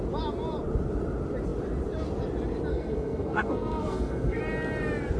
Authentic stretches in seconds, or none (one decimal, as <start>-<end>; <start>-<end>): 0.0-2.7; 4.4-5.2